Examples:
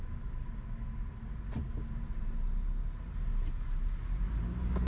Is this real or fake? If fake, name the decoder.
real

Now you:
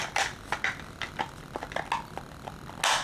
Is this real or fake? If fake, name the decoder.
real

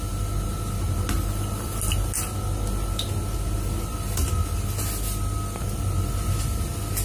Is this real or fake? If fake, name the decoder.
real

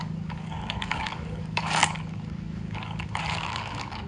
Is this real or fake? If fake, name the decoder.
fake, codec, DAC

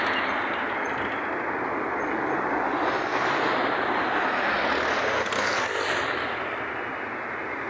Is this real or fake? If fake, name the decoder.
real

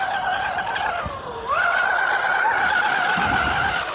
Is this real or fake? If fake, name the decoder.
fake, vocoder, BigVGAN v2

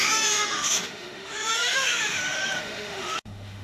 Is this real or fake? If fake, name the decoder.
fake, autoencoder, DAC-VAE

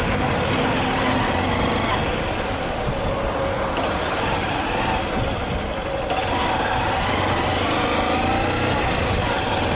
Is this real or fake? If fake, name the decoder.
real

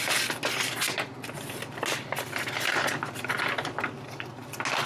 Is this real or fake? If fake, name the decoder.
real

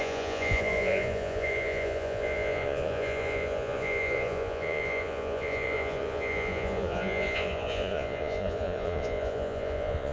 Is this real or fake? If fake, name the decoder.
fake, vocoder, Vocos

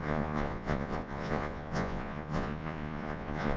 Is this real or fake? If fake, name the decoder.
fake, vocoder, Vocos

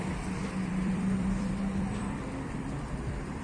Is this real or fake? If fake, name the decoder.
fake, vocoder, BigVGAN v2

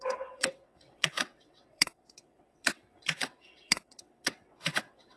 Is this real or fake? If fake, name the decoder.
fake, vocoder, WaveNeXt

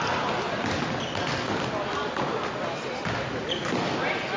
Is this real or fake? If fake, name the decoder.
real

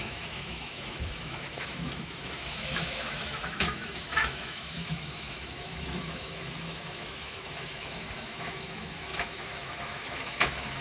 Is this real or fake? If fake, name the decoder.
fake, autoencoder, DAC-VAE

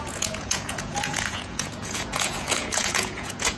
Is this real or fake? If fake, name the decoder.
fake, vocoder, Vocos